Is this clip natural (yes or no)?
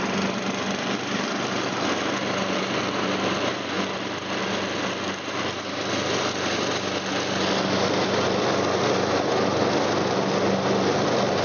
yes